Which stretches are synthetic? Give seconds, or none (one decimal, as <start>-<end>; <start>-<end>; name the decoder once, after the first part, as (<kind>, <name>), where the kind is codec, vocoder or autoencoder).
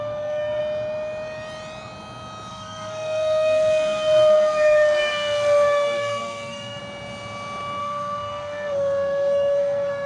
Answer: 0.0-0.6 (codec, SNAC); 2.5-6.8; 7.8-10.1